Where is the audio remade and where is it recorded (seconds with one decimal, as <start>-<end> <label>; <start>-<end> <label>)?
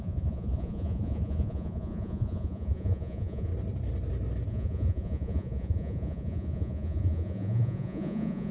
0.0-3.5 remade; 3.5-4.5 recorded; 4.5-8.5 remade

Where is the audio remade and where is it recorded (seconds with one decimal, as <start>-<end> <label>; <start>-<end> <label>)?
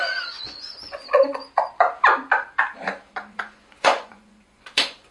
0.0-1.4 remade; 1.4-3.3 recorded; 3.3-5.1 remade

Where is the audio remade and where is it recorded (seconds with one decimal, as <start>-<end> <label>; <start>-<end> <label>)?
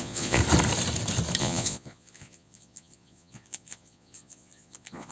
0.0-0.4 remade; 0.4-1.4 recorded; 1.4-5.1 remade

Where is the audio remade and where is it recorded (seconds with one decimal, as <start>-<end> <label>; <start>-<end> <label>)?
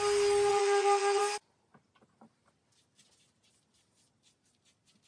0.0-0.5 recorded; 0.5-1.2 remade; 1.2-5.1 recorded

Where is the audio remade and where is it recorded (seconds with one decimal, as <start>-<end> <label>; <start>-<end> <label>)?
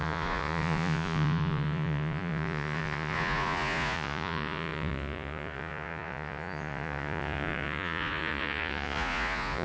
0.0-9.6 remade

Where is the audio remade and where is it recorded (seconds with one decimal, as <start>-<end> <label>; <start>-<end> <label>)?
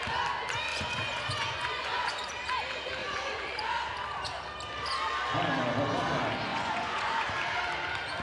0.0-0.7 recorded; 0.7-2.3 remade; 2.3-3.0 recorded; 3.0-3.8 remade; 3.8-6.5 recorded; 6.5-7.3 remade; 7.3-8.2 recorded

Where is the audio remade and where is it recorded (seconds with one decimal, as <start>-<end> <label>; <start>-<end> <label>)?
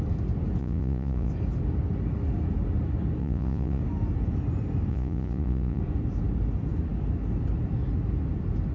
0.0-0.6 recorded; 0.6-1.3 remade; 1.3-3.2 recorded; 3.2-3.8 remade; 3.8-4.9 recorded; 4.9-5.8 remade; 5.8-8.7 recorded